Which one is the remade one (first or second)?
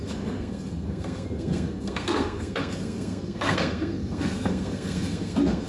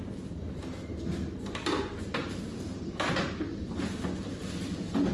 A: first